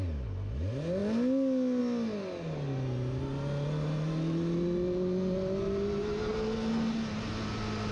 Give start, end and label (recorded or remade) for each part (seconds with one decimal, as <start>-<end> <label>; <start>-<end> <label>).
0.0-7.9 recorded